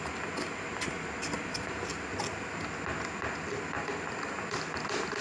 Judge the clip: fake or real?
real